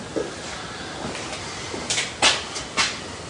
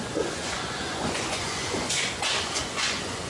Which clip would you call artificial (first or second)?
second